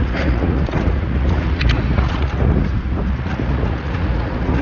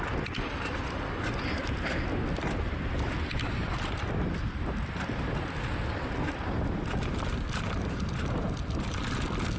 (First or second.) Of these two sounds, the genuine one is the second